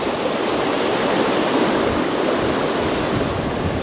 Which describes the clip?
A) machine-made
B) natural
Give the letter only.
B